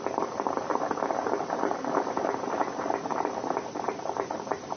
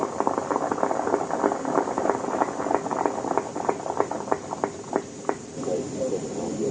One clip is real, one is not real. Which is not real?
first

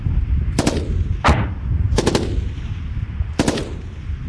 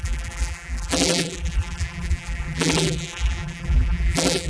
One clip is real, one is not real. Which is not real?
second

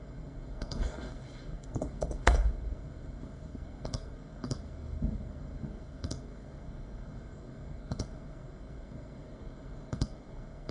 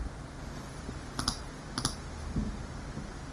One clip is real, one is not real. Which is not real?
first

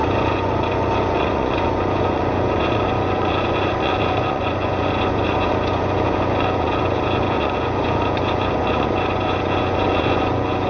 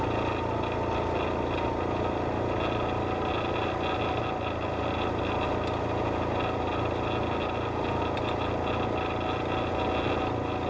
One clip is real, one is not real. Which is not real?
first